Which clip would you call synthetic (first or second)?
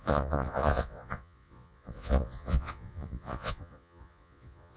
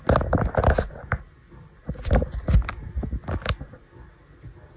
first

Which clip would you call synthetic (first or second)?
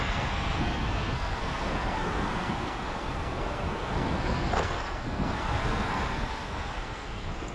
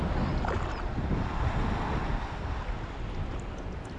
first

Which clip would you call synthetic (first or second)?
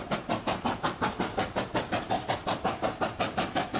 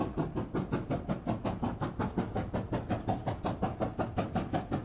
first